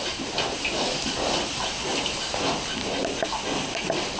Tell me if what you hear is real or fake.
real